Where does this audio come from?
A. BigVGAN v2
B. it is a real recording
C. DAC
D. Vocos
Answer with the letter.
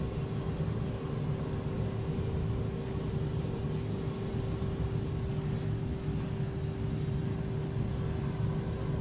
B